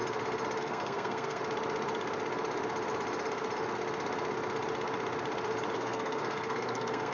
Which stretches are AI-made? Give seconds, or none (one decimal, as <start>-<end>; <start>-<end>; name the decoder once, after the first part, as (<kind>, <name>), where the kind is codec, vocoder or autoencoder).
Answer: 0.6-1.4 (codec, SNAC); 5.7-7.1